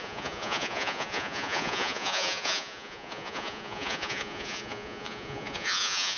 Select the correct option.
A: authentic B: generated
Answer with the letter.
B